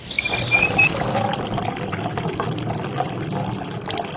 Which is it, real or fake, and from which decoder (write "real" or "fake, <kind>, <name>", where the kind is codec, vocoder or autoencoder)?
real